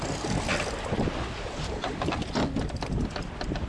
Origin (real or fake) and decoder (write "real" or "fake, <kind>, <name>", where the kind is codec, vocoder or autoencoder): real